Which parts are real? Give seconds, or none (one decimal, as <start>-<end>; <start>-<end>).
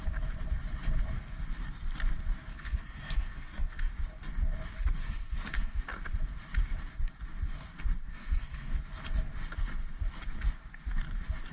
0.0-2.5; 3.9-5.0; 5.8-8.1; 8.8-11.5